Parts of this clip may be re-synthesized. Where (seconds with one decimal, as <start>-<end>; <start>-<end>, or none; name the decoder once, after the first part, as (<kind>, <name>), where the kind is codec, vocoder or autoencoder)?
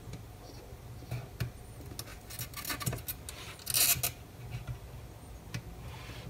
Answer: none